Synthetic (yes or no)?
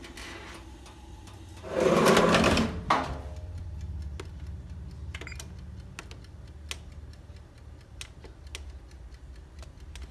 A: no